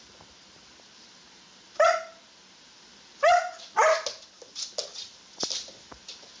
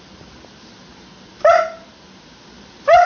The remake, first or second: first